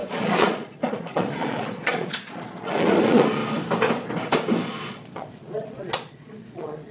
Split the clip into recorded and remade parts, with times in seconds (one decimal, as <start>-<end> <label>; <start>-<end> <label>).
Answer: 0.0-3.4 remade; 3.4-4.9 recorded; 4.9-6.9 remade